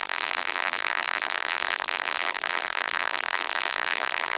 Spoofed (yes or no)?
yes